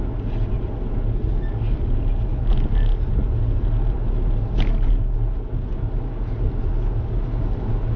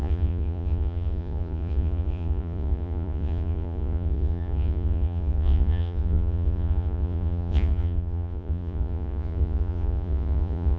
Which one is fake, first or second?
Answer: second